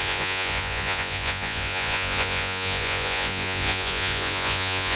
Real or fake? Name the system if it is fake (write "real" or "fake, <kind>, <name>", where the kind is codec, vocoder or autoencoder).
fake, vocoder, Vocos